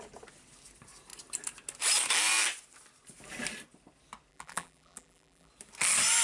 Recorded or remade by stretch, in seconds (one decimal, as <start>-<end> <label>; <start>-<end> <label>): 0.0-4.3 recorded; 4.3-5.5 remade; 5.5-6.2 recorded